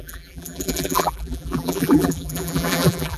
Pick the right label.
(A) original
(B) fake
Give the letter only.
B